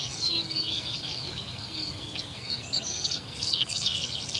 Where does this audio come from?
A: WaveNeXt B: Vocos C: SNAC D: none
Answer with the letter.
C